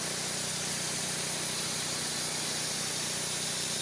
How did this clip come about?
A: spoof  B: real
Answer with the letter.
B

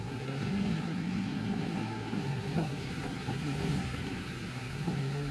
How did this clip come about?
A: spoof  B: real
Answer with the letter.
A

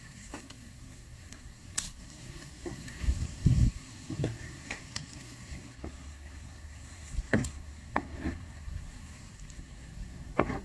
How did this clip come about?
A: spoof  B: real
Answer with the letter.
A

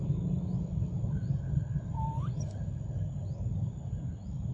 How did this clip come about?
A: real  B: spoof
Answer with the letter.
A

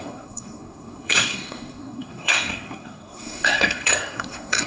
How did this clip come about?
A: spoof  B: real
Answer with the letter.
A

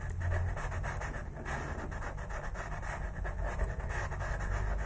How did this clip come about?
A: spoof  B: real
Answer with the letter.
B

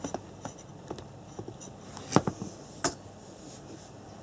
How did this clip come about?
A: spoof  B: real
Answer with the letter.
B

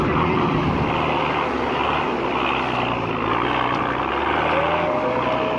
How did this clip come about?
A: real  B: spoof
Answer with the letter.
A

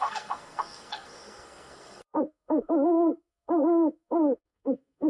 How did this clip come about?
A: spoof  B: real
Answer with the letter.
A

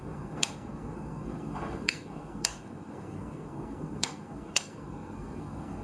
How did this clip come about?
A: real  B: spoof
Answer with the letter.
B